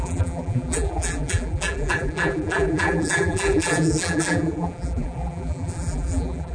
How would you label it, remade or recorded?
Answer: remade